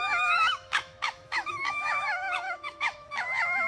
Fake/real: fake